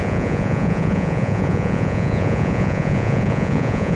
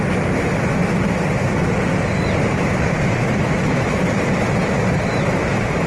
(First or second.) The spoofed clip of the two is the first